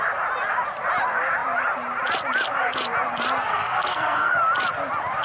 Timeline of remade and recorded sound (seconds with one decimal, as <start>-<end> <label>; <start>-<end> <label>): 0.0-3.5 recorded; 3.5-4.3 remade; 4.3-5.2 recorded

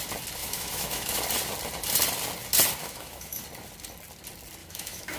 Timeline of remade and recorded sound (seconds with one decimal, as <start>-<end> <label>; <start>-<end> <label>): 0.0-0.4 recorded; 0.4-1.2 remade; 1.2-2.8 recorded; 2.8-3.4 remade; 3.4-4.6 recorded; 4.6-5.2 remade